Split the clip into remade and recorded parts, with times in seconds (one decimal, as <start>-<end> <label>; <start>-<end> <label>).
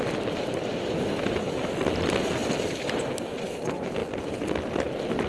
0.0-5.3 recorded